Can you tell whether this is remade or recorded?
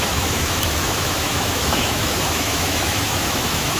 remade